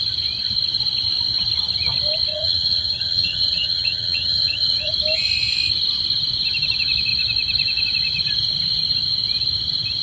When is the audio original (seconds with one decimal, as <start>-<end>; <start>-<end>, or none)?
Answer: 0.0-2.3; 4.9-10.0